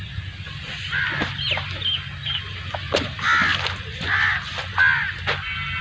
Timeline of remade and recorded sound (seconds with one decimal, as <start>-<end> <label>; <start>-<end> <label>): 0.0-5.8 recorded